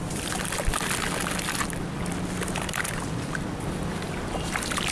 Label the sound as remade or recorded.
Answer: recorded